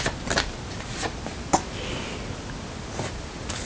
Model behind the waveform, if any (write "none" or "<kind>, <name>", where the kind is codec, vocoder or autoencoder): none